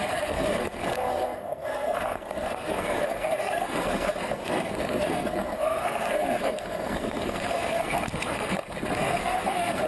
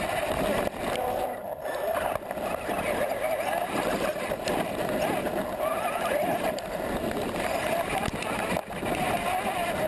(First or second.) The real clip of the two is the second